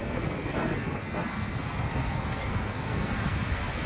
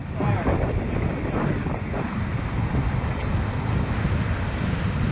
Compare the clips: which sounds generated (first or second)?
first